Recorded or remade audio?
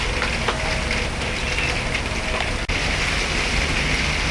recorded